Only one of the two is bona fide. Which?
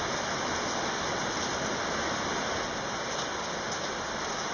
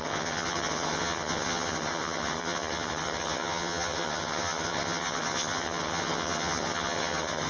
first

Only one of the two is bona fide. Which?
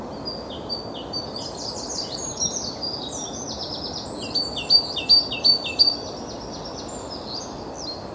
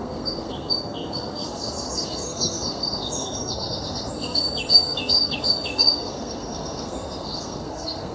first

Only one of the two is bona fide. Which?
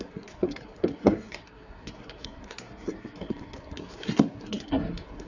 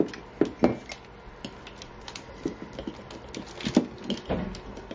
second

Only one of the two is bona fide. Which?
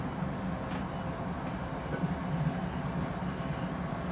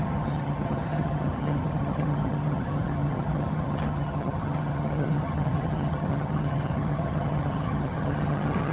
first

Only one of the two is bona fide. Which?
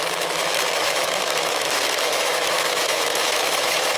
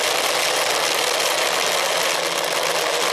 second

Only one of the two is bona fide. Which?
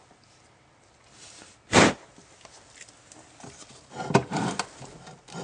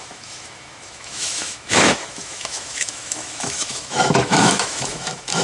first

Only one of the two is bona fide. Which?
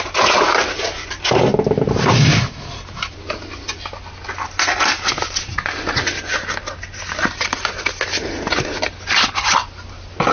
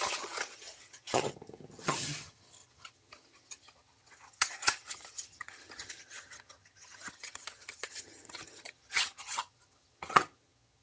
first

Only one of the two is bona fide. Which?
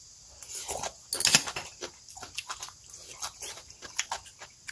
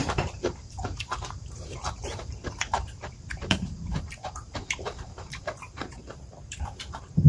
first